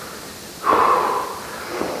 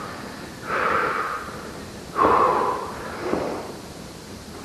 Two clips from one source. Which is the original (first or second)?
first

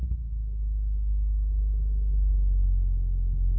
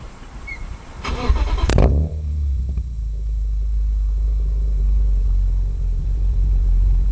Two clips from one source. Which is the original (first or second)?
first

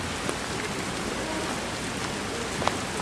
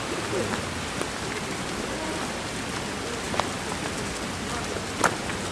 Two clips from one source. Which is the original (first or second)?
first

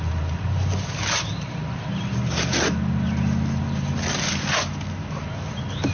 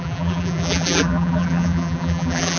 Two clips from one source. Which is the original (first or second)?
first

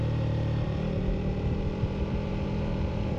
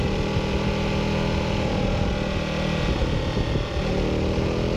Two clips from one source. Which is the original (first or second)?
second